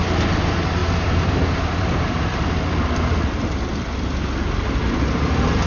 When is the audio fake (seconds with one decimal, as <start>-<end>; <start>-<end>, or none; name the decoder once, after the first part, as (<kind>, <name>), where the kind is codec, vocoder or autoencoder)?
0.8-4.2 (vocoder, BigVGAN v2)